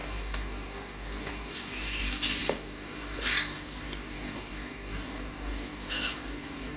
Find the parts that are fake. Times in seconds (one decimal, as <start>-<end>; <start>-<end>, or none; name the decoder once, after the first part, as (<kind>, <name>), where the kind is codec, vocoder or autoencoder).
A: 0.0-6.8 (codec, DAC)